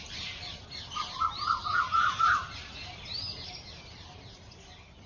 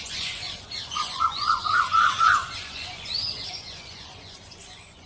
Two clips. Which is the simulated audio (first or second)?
second